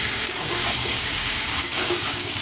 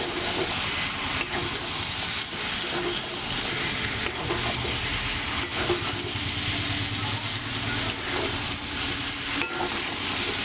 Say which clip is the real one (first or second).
second